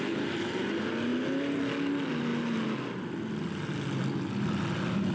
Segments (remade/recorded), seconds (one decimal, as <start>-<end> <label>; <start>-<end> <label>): 0.0-5.1 recorded